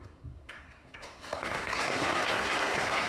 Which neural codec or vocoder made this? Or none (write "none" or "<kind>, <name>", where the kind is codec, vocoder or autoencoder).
codec, SNAC